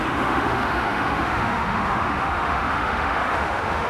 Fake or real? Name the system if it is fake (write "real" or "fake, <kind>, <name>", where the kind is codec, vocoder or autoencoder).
fake, autoencoder, DAC-VAE